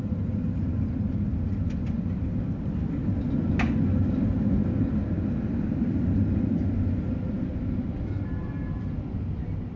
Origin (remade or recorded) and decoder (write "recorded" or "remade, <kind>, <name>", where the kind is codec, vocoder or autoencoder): recorded